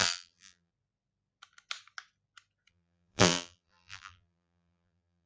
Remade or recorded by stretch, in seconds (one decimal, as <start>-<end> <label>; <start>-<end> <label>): 0.0-0.7 remade; 0.7-2.7 recorded; 2.7-5.3 remade